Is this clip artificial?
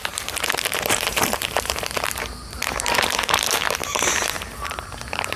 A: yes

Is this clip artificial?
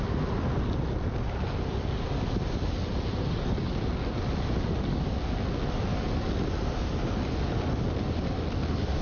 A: no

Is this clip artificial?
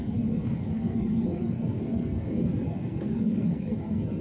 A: yes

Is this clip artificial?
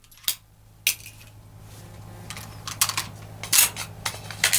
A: no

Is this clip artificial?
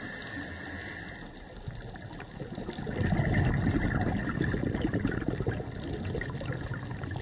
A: no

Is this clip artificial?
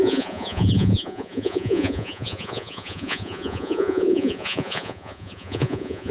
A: yes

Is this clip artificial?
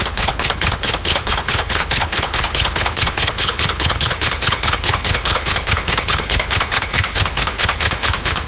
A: yes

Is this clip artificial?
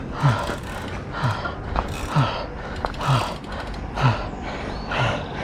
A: no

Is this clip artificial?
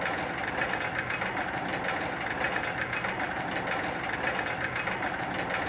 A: no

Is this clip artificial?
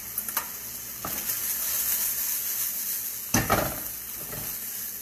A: no